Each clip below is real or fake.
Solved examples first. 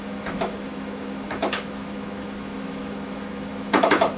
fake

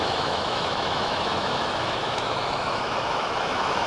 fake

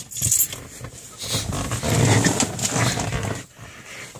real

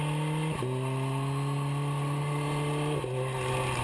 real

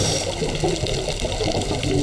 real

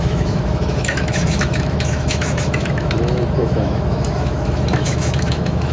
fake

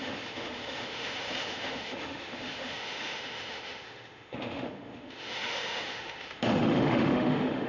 fake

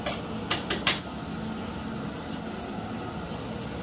real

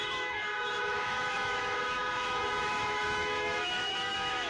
fake